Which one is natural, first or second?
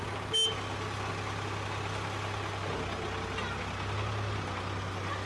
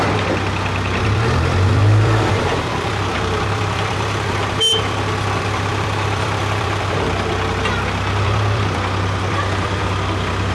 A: first